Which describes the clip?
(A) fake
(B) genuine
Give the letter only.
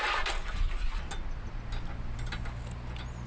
B